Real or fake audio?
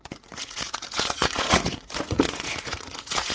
fake